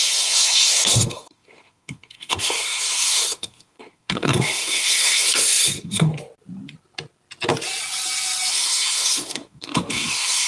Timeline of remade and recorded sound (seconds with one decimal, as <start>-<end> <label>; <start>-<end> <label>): 0.0-6.1 remade; 6.1-8.5 recorded; 8.5-10.5 remade